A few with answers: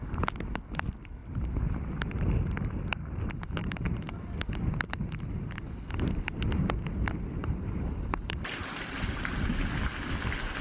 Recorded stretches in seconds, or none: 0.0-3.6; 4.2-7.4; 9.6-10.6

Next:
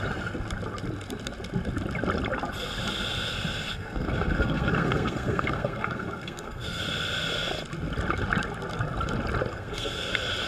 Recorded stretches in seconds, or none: 0.0-3.7; 6.8-9.5; 10.1-10.5